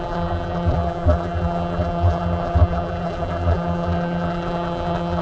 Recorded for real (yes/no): no